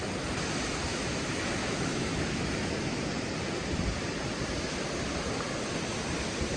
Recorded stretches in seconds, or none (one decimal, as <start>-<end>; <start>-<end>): 0.0-0.9; 3.0-6.6